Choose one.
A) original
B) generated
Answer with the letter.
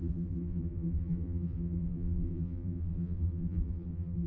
B